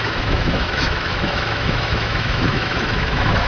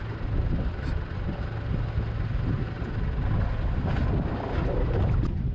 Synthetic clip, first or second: first